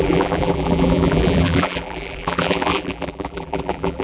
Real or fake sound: fake